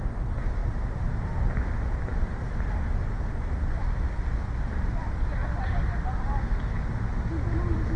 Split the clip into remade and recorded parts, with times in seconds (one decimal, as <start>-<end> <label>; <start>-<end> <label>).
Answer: 0.0-0.6 recorded; 0.6-1.2 remade; 1.2-8.0 recorded